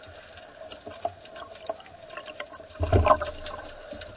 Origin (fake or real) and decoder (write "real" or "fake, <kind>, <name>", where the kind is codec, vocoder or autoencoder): real